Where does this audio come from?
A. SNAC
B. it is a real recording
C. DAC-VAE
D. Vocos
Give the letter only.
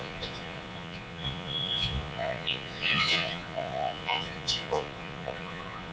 D